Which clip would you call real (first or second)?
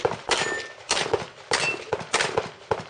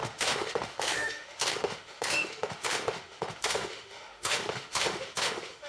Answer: first